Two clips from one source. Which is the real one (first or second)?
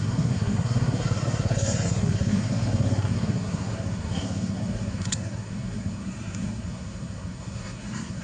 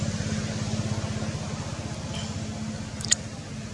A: second